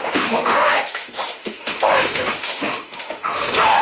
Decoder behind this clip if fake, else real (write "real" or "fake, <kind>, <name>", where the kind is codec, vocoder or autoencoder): fake, autoencoder, DAC-VAE